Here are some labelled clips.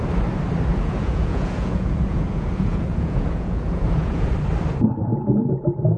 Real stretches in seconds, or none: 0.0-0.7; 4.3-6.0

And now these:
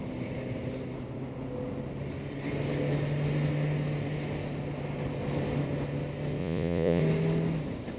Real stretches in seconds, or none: 0.0-6.4; 7.0-8.0

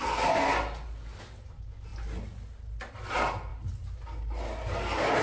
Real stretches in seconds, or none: 0.0-5.2

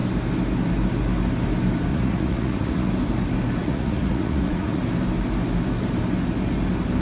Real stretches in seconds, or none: 0.0-1.9; 2.9-3.6; 4.8-7.0

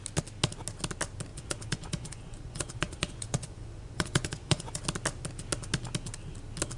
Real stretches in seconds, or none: 0.0-1.3; 4.8-6.8

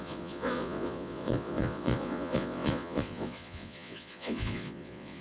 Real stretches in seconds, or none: none

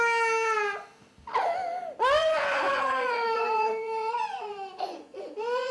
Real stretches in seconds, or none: 0.0-2.2